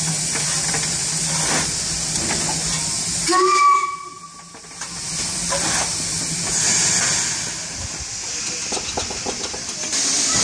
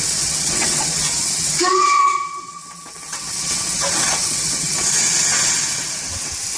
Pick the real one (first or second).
first